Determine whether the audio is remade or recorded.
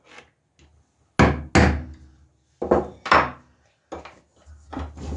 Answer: recorded